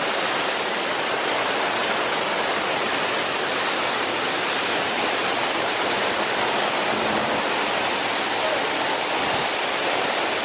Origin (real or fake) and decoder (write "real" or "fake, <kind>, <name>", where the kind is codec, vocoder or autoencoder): fake, vocoder, BigVGAN v2